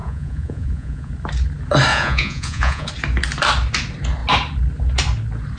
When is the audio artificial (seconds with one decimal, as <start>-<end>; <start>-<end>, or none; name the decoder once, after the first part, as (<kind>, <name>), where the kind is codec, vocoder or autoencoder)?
0.0-1.1 (vocoder, Vocos); 1.9-2.9